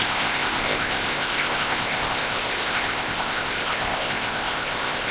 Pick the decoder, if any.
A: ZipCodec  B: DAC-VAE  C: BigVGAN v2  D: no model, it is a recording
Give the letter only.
A